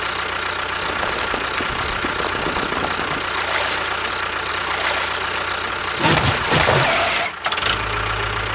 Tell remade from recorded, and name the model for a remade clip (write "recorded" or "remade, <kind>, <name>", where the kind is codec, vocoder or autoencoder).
recorded